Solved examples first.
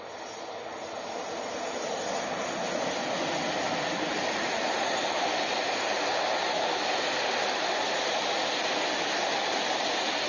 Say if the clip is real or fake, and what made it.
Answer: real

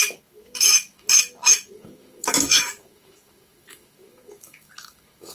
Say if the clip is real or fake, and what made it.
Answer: fake, autoencoder, DAC-VAE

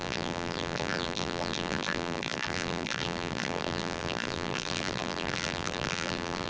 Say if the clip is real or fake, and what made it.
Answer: fake, vocoder, BigVGAN v2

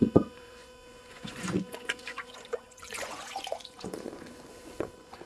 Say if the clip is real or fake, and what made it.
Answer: fake, vocoder, Vocos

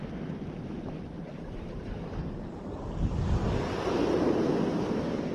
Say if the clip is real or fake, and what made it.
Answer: real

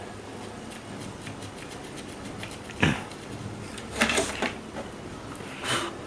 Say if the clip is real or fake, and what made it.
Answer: fake, vocoder, BigVGAN v2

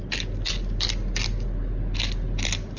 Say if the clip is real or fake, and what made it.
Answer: real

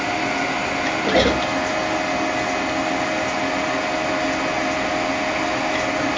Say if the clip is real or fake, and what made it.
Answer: real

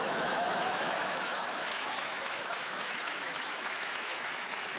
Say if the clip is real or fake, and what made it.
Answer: fake, autoencoder, DAC-VAE